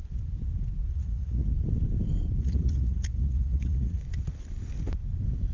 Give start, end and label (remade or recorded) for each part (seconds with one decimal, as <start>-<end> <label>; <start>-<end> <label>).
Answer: 0.0-0.9 recorded; 0.9-1.5 remade; 1.5-2.4 recorded; 2.4-4.0 remade; 4.0-5.5 recorded